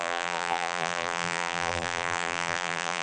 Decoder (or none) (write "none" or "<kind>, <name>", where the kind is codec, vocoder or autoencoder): vocoder, BigVGAN v2